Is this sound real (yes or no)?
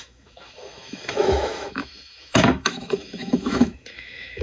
no